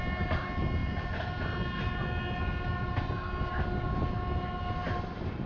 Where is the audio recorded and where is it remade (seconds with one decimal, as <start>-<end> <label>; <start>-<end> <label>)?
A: 0.0-5.5 recorded